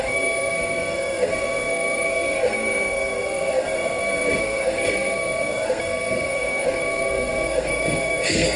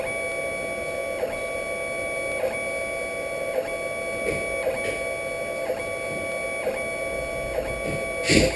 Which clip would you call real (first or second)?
second